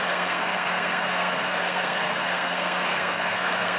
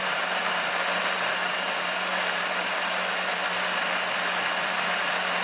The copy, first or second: first